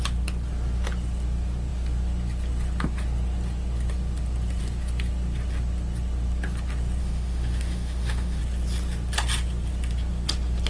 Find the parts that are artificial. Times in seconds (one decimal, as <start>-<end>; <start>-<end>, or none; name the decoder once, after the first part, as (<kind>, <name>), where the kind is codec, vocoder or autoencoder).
7.0-8.4 (autoencoder, DAC-VAE)